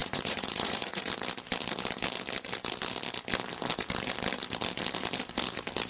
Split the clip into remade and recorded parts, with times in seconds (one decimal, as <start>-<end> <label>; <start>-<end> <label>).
0.0-1.1 remade; 1.1-5.9 recorded